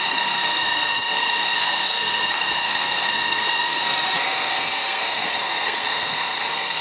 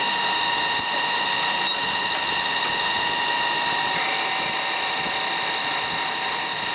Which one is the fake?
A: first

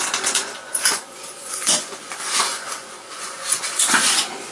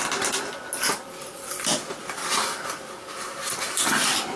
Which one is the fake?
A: first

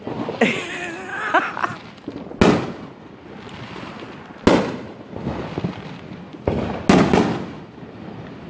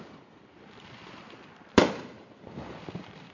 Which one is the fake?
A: second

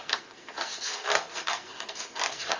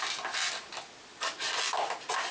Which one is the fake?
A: first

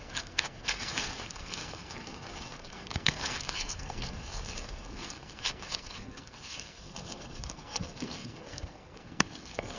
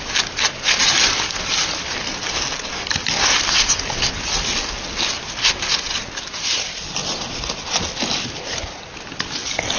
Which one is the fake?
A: first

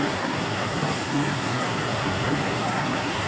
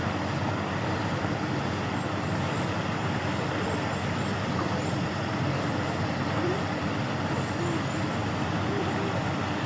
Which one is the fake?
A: first